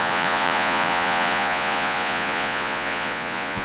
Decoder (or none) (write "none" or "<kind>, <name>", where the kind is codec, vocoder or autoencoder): vocoder, Vocos